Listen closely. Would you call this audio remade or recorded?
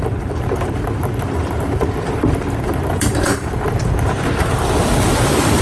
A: remade